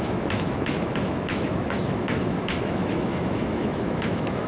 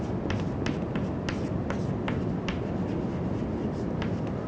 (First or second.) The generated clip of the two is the first